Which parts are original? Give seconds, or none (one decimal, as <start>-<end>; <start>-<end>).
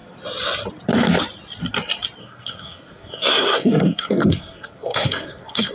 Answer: 0.0-2.2